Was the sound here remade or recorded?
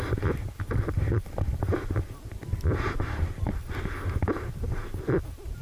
remade